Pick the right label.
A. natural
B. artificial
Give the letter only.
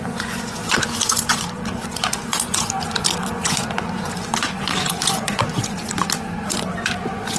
B